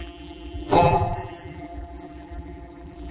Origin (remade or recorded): remade